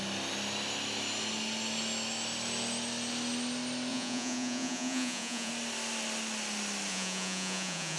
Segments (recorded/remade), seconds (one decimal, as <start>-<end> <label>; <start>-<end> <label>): 0.0-3.9 recorded; 3.9-5.5 remade; 5.5-6.9 recorded; 6.9-8.0 remade